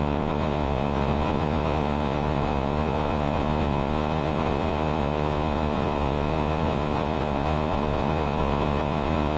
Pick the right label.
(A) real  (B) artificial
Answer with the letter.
B